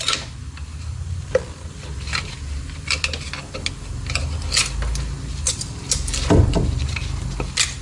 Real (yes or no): yes